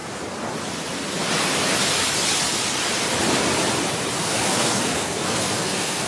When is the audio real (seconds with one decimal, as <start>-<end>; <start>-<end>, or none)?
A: 0.0-4.2